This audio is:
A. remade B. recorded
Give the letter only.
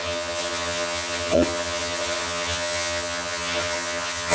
A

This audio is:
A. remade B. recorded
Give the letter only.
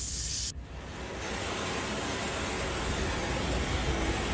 B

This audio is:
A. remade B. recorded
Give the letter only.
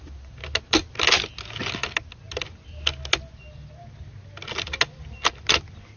B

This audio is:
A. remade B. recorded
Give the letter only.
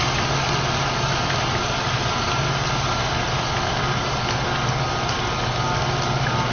B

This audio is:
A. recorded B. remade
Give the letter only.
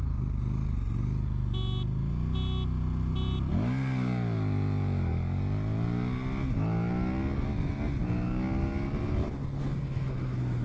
A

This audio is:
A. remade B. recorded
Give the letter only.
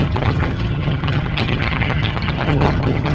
A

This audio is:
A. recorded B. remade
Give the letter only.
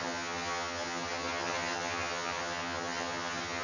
B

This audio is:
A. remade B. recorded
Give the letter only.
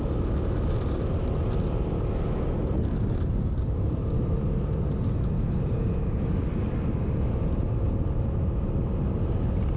B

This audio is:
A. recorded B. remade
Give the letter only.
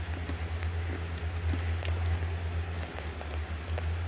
A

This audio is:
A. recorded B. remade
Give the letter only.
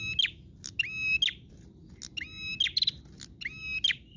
A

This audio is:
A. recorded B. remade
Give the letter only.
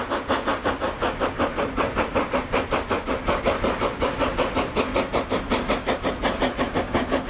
A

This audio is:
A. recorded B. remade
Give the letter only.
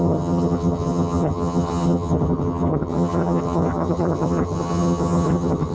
B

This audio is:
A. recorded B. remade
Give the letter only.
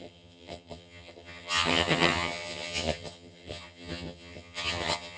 B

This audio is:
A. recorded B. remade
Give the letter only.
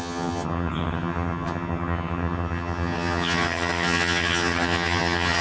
B